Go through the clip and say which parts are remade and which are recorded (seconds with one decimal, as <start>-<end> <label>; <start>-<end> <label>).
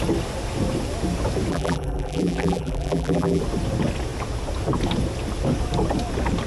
0.0-1.5 recorded; 1.5-3.4 remade; 3.4-6.5 recorded